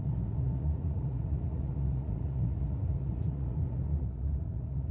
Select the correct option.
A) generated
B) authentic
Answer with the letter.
A